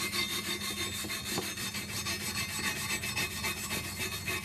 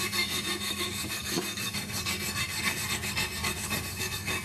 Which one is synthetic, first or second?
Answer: second